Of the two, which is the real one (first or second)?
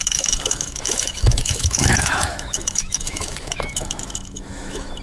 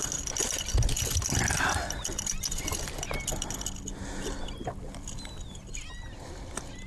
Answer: second